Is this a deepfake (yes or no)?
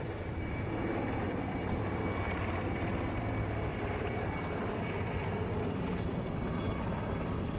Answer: yes